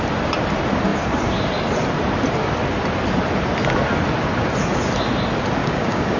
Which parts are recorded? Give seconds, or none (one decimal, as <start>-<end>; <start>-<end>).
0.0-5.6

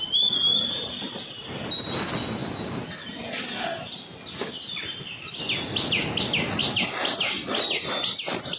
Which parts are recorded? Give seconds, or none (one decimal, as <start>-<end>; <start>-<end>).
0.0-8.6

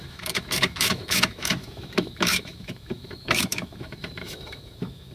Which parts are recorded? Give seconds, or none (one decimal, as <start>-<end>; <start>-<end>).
none

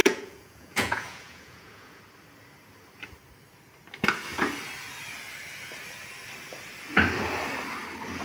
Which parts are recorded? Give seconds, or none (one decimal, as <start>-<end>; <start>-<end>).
2.0-8.2